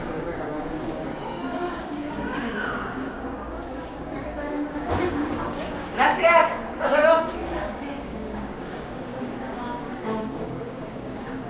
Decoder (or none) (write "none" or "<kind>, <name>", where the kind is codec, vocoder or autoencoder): codec, DAC